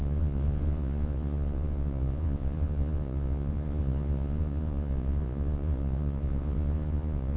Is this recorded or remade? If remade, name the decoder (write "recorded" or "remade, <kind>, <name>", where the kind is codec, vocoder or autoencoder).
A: remade, vocoder, Vocos